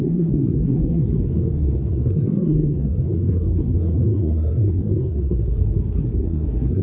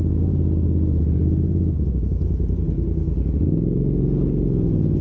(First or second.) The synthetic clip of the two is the first